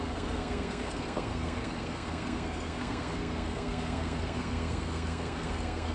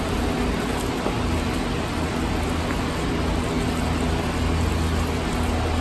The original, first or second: second